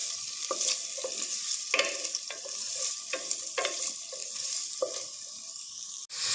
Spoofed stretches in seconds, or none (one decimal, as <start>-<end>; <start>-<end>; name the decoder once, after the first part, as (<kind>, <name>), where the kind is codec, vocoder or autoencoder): none